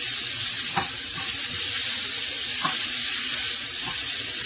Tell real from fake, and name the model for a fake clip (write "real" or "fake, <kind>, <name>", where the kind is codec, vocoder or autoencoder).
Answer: real